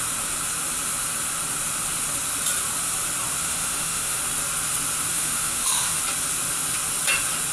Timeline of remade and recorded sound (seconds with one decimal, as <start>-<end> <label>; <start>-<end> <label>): 0.0-3.4 recorded; 3.4-4.2 remade; 4.2-5.1 recorded; 5.1-6.0 remade; 6.0-7.5 recorded